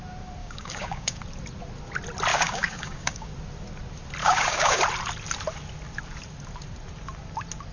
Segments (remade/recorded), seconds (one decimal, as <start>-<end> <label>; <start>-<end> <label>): 0.0-0.4 recorded; 0.4-1.2 remade; 1.2-2.3 recorded; 2.3-3.3 remade; 3.3-4.2 recorded; 4.2-4.8 remade; 4.8-7.7 recorded